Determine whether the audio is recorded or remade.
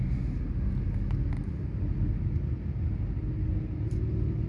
recorded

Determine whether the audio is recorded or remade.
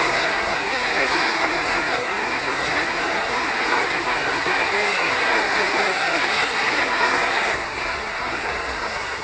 remade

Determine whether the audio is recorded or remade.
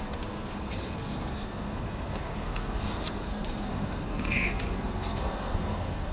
remade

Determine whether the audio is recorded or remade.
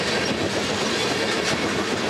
recorded